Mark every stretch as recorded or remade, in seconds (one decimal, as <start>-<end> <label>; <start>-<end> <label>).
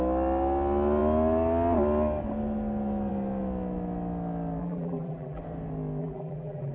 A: 0.0-4.6 recorded; 4.6-5.4 remade; 5.4-6.0 recorded; 6.0-6.7 remade